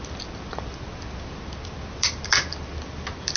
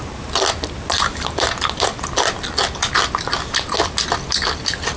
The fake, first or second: first